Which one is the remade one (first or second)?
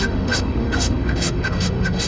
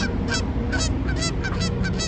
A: first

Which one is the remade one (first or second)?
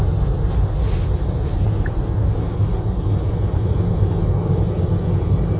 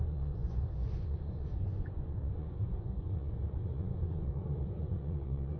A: second